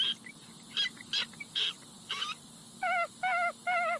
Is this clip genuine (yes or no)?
yes